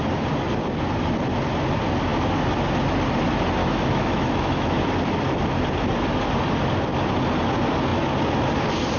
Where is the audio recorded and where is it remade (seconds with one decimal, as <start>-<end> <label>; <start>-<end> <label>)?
0.0-3.6 recorded; 3.6-4.8 remade; 4.8-9.0 recorded